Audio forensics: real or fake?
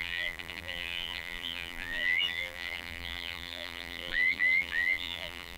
fake